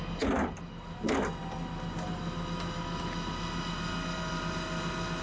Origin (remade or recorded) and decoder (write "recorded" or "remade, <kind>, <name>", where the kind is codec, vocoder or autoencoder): recorded